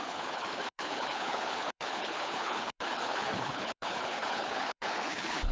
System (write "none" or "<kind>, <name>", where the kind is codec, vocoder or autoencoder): codec, HILCodec